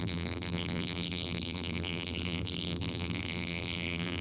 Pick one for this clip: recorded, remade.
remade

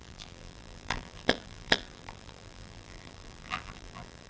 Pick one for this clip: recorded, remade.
remade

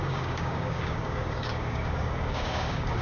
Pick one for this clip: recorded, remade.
remade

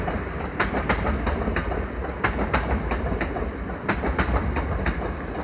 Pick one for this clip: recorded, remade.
recorded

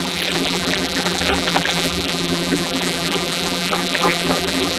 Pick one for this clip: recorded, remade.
remade